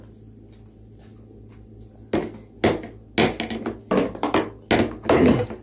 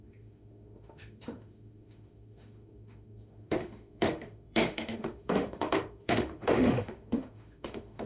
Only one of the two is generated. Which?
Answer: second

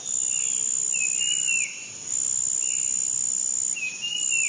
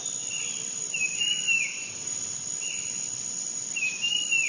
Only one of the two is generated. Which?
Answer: second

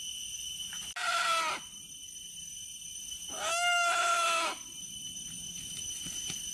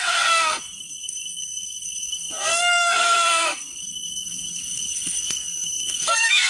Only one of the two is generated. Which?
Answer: second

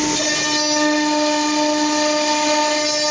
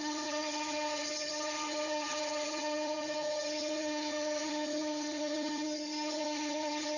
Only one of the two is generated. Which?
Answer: second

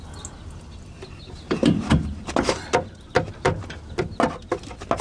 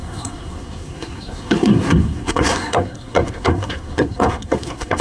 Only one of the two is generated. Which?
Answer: second